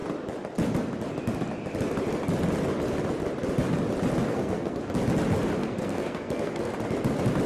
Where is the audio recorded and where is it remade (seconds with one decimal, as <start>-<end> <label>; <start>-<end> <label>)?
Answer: 0.0-4.3 recorded; 4.3-4.8 remade; 4.8-5.6 recorded; 5.6-6.7 remade; 6.7-7.5 recorded